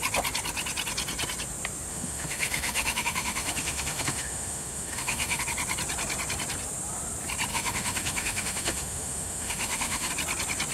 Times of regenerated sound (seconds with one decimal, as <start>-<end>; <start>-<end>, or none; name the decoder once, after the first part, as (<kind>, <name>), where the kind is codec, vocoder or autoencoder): 1.9-5.4 (autoencoder, DAC-VAE); 7.5-10.1